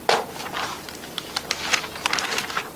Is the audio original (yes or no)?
yes